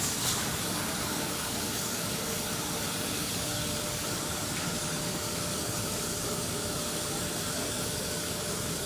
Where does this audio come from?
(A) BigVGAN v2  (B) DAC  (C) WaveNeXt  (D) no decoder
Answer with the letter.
B